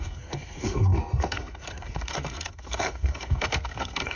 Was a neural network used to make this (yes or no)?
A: yes